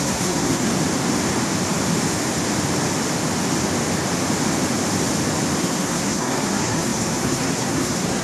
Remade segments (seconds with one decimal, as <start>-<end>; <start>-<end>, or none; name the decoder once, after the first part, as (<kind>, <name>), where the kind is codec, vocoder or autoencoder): 0.0-0.7 (codec, SNAC); 5.6-8.2